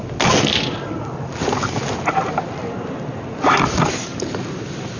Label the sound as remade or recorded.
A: recorded